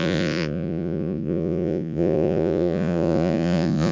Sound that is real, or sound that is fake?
fake